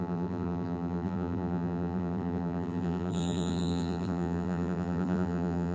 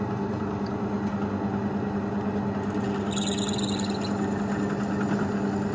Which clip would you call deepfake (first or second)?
first